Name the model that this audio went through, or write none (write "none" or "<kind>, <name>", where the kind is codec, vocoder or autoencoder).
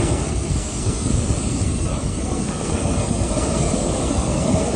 codec, SNAC